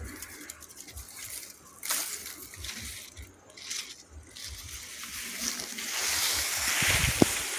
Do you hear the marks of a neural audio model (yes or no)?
no